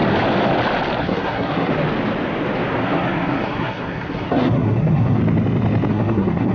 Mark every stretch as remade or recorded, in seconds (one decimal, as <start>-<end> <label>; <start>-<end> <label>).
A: 0.0-1.0 recorded; 1.0-1.7 remade; 1.7-2.8 recorded; 2.8-5.2 remade; 5.2-5.9 recorded; 5.9-6.5 remade